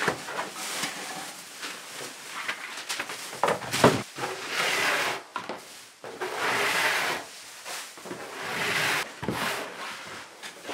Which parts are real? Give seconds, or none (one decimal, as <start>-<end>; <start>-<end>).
0.0-10.7